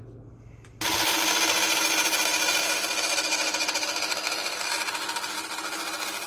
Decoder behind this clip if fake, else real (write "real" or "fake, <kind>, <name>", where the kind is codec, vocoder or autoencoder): real